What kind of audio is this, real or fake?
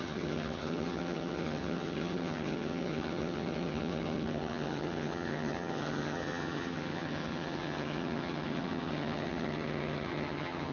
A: fake